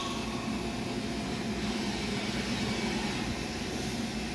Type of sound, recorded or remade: recorded